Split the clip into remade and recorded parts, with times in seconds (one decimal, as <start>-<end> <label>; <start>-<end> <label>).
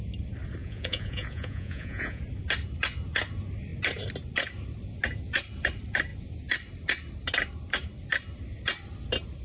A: 0.0-0.6 recorded; 0.6-2.2 remade; 2.2-9.4 recorded